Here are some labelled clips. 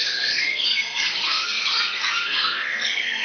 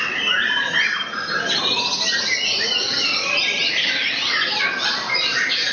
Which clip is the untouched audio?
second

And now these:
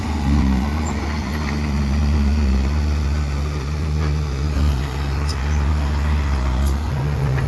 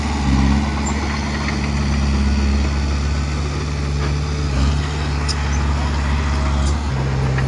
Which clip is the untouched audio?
second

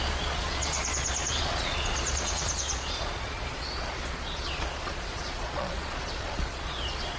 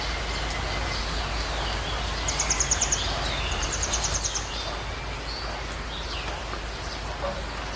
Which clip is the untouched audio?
second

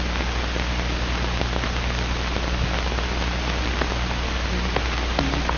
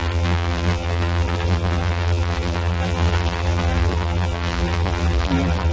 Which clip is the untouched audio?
first